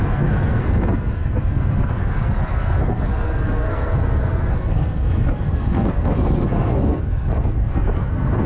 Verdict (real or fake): fake